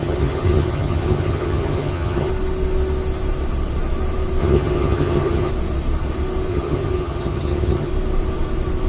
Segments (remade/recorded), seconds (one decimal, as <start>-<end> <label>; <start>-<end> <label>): 0.0-2.3 remade; 2.3-4.4 recorded; 4.4-5.5 remade; 5.5-6.5 recorded; 6.5-7.9 remade; 7.9-8.9 recorded